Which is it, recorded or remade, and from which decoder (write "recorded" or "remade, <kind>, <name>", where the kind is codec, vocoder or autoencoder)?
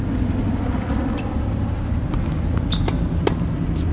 recorded